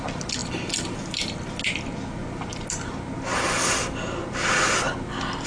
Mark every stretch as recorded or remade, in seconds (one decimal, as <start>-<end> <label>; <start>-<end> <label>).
0.0-5.5 recorded